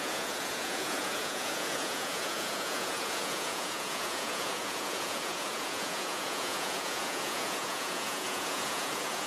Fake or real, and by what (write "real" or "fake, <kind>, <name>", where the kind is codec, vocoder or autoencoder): fake, vocoder, Vocos